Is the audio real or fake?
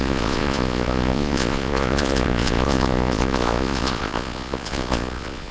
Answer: fake